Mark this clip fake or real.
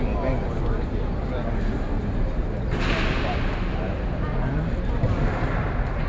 real